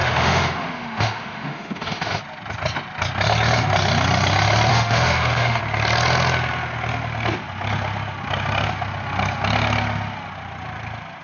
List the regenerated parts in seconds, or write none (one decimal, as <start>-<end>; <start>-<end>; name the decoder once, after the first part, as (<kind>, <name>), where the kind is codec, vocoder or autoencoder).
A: 0.0-2.2 (autoencoder, DAC-VAE); 4.7-5.6

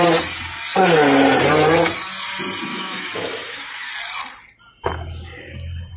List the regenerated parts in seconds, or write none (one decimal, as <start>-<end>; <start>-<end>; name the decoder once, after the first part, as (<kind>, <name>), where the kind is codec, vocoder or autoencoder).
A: 2.7-3.9 (autoencoder, DAC-VAE)